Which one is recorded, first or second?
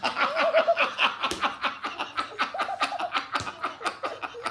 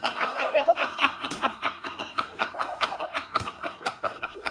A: first